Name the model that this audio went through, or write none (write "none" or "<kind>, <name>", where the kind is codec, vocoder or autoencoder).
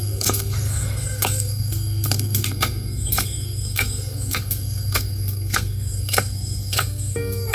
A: codec, SNAC